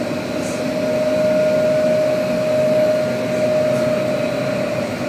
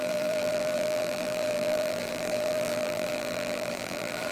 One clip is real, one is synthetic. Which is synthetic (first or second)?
second